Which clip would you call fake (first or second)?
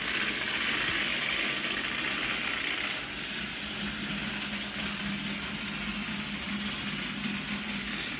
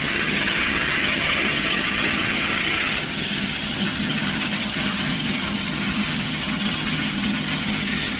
second